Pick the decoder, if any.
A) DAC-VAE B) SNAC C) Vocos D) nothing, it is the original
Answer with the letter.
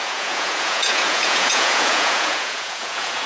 C